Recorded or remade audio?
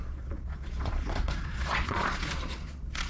remade